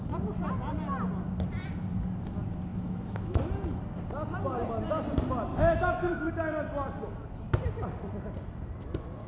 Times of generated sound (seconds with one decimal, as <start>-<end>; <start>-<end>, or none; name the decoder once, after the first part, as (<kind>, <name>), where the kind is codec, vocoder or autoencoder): 2.7-3.4 (autoencoder, DAC-VAE); 5.5-6.3